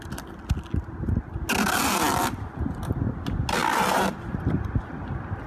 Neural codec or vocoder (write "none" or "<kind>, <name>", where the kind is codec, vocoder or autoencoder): none